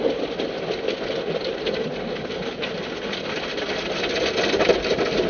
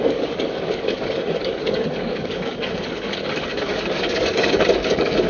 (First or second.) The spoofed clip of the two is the second